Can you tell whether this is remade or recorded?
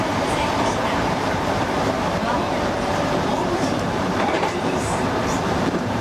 remade